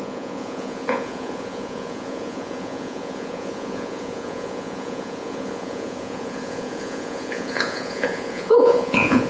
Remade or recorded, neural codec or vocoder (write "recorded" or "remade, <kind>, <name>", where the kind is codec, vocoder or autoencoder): remade, vocoder, Vocos